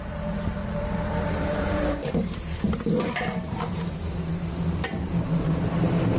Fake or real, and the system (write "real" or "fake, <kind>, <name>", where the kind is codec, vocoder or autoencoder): fake, vocoder, BigVGAN v2